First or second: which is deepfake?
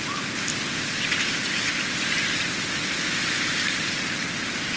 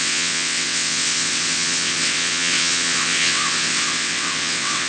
second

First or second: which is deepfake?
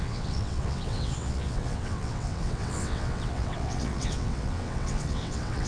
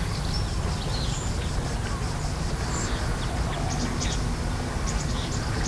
first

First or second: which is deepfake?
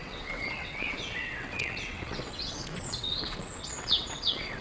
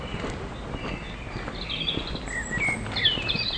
first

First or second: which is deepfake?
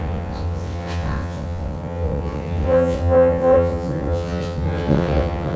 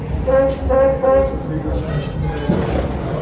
first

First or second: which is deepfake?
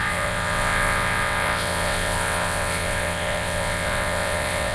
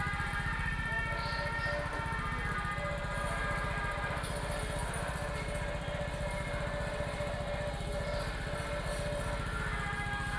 first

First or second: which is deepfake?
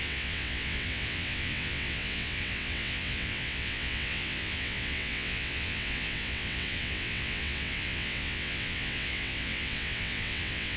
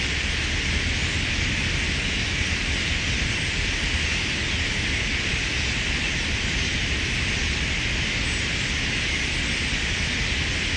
first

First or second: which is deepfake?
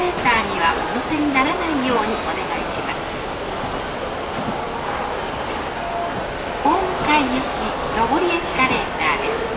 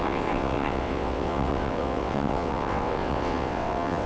second